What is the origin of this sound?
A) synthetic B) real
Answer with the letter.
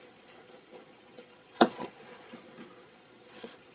A